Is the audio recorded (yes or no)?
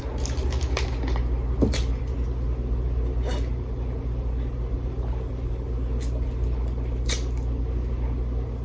yes